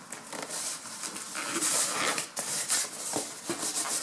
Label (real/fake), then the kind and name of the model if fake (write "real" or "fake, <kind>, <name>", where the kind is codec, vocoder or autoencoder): real